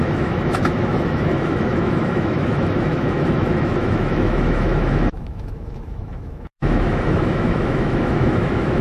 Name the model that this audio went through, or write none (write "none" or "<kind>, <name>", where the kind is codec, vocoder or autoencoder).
autoencoder, DAC-VAE